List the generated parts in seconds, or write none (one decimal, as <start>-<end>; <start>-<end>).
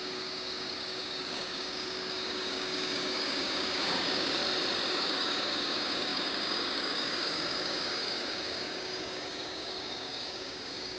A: 0.0-4.4; 4.9-11.0